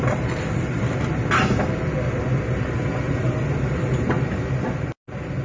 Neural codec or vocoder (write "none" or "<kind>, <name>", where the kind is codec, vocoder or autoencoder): none